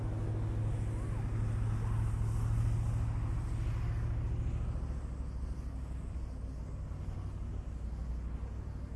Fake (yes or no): no